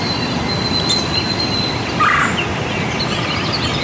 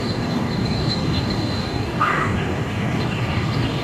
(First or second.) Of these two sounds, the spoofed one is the second